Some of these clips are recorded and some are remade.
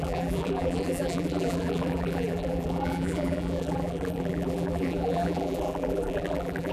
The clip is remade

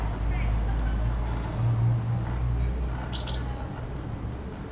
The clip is recorded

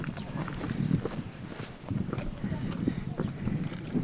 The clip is remade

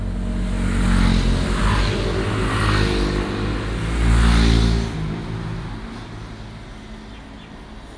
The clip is recorded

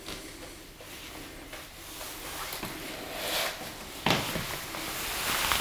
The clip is recorded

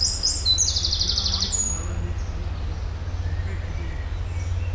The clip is recorded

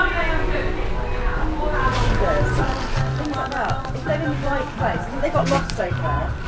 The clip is recorded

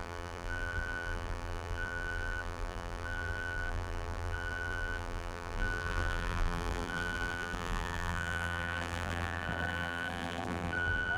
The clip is remade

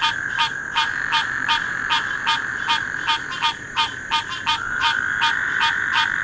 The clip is remade